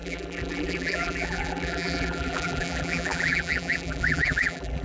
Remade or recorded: remade